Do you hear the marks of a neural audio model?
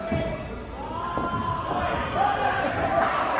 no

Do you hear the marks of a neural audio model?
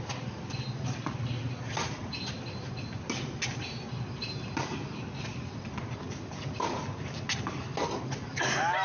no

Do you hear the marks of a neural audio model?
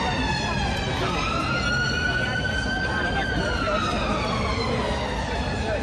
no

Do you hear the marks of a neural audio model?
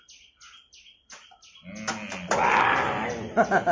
no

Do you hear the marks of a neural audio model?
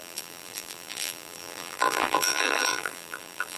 yes